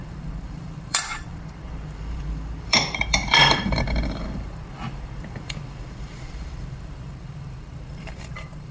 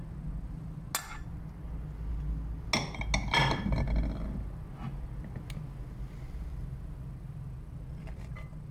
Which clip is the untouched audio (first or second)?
second